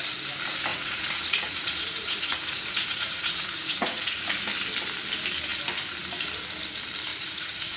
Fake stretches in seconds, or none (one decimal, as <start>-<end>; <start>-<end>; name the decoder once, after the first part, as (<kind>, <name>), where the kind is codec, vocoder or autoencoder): 0.7-4.4 (vocoder, Vocos); 7.1-7.8